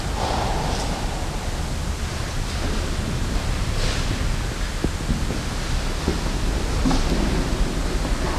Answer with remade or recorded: recorded